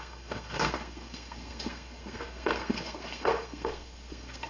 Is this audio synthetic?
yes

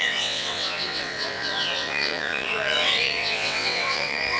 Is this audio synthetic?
yes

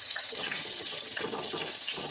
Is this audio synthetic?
yes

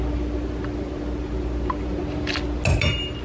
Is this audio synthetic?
no